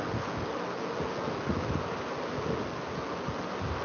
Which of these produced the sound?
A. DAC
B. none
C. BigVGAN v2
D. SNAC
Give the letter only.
B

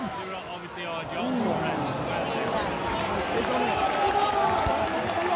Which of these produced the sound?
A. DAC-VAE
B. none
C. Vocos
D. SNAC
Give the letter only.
B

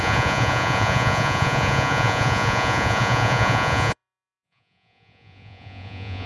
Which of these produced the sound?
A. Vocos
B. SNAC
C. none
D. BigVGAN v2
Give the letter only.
A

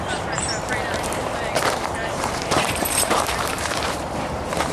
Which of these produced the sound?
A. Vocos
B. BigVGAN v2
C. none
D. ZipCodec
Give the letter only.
B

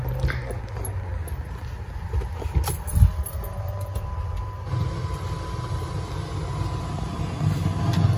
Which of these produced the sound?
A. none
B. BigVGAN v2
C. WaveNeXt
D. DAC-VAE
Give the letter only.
A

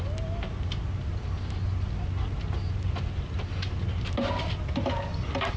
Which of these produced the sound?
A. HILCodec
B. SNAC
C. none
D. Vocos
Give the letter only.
C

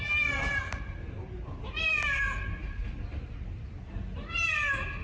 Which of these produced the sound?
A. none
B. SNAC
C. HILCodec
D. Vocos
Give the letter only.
A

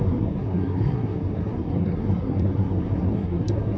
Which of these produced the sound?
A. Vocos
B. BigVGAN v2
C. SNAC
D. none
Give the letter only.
C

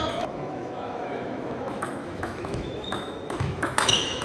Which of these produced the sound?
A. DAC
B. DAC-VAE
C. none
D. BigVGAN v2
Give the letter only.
B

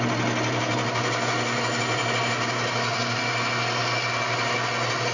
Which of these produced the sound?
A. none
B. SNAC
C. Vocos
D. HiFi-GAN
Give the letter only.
A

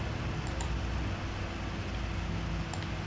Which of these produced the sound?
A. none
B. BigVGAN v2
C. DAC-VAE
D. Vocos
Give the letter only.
A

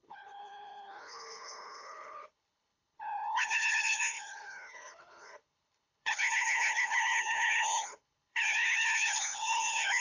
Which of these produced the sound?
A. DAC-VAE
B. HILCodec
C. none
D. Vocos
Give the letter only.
B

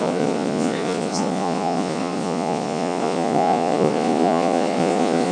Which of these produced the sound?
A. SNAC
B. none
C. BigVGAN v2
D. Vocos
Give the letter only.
D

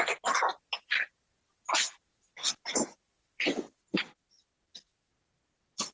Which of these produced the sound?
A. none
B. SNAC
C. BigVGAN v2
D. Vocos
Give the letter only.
A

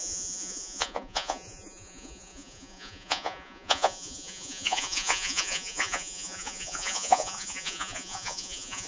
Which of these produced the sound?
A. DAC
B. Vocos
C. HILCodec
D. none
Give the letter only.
B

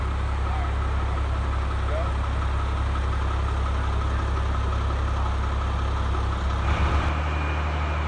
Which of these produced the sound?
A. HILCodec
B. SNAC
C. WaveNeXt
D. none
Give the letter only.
D